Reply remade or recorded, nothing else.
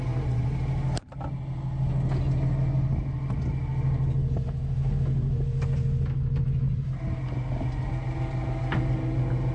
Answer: recorded